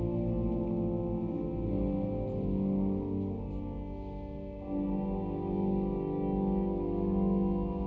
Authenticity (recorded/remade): recorded